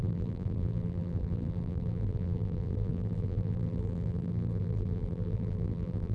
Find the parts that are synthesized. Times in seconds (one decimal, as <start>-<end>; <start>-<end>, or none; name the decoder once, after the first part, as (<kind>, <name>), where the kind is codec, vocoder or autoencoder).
0.0-6.1 (vocoder, BigVGAN v2)